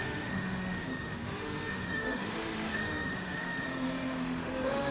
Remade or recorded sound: remade